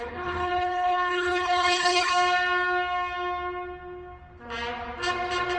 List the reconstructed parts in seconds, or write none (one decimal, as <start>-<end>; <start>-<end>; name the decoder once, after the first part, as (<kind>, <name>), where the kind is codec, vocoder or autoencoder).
0.0-2.1 (codec, HILCodec)